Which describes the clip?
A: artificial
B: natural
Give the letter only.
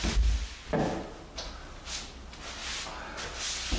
B